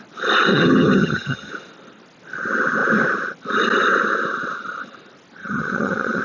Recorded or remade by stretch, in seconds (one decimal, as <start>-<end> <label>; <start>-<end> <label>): 0.0-0.5 recorded; 0.5-1.5 remade; 1.5-5.4 recorded; 5.4-6.2 remade